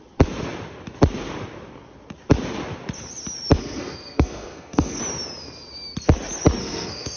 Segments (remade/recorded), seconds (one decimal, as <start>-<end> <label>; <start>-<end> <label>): 0.0-3.6 recorded; 3.6-5.0 remade; 5.0-6.6 recorded; 6.6-7.2 remade